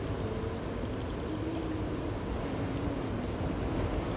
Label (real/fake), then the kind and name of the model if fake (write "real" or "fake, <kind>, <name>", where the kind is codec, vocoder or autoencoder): real